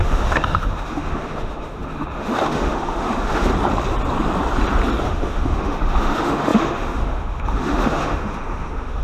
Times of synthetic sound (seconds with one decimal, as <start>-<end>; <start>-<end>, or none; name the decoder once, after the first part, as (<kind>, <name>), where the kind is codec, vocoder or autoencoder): 0.0-3.5 (autoencoder, DAC-VAE); 5.0-9.0